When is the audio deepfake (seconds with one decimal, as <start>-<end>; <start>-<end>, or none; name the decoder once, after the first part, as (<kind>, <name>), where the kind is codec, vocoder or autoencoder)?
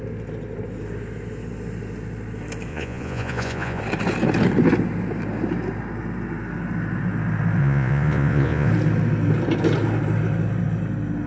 2.7-3.8 (vocoder, Vocos); 7.6-8.7